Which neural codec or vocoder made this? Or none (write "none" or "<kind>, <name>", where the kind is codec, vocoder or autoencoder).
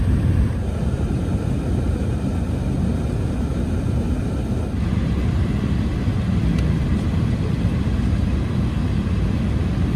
none